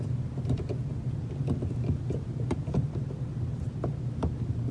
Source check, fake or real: real